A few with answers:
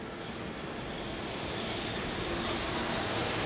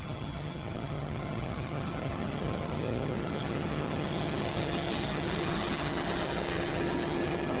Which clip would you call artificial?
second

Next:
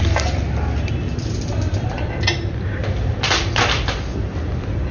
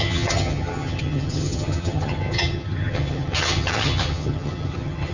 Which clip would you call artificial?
second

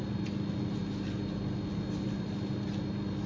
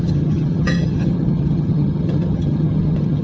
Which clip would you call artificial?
second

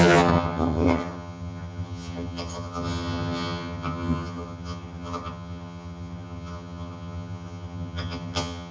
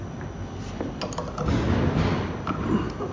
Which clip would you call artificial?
first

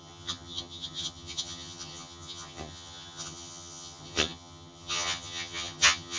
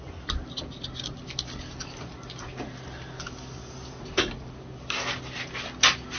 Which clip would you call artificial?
first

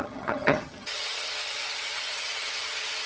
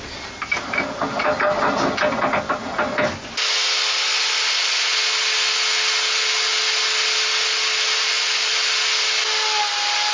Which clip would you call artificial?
first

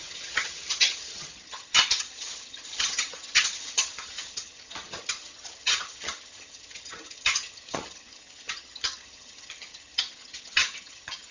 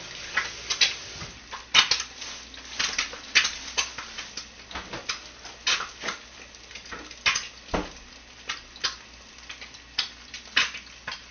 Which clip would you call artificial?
first